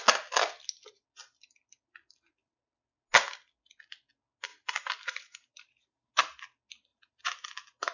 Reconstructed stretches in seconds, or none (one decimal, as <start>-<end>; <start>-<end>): 4.5-6.1; 6.9-7.5